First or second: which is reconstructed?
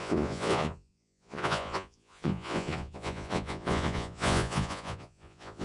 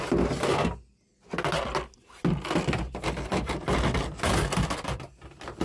first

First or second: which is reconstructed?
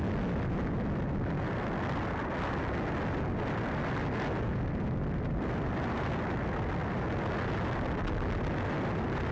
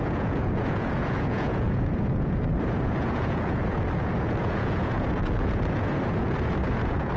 second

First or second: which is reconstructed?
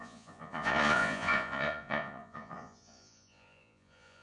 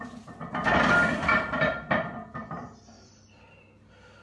first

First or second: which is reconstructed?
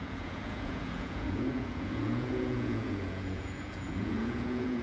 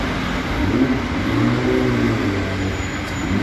first